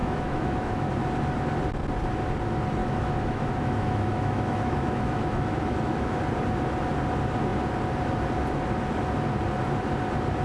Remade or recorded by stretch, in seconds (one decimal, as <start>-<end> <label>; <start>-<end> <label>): 0.0-0.9 remade; 0.9-2.8 recorded; 2.8-6.2 remade; 6.2-10.4 recorded